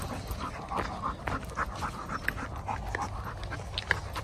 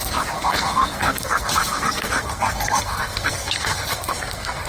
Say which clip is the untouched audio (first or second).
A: first